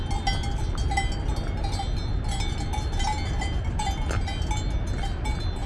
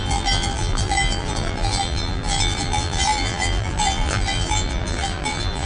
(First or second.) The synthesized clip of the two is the second